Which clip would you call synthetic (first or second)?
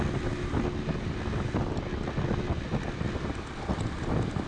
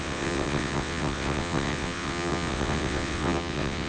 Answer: second